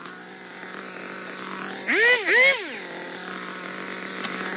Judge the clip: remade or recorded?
recorded